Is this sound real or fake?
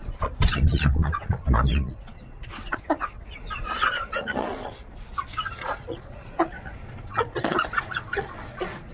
fake